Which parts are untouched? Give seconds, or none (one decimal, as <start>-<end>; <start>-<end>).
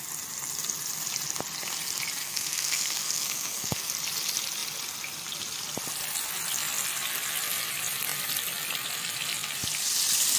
0.0-2.2; 3.9-10.4